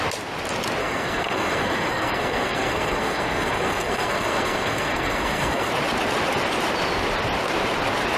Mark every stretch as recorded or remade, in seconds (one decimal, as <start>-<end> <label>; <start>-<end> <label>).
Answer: 0.0-0.8 recorded; 0.8-5.7 remade; 5.7-8.2 recorded